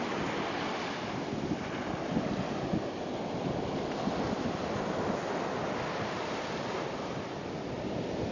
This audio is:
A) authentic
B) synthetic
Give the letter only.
B